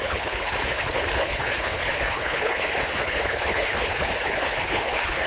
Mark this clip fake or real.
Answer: fake